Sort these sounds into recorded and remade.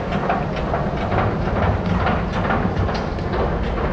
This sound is recorded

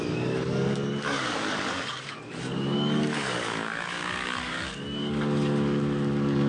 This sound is remade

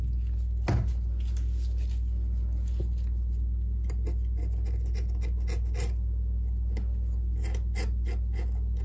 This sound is recorded